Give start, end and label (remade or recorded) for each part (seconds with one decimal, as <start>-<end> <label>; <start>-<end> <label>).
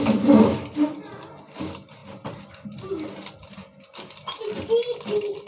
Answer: 0.0-5.5 recorded